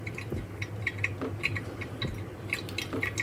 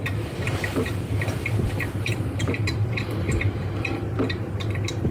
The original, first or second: first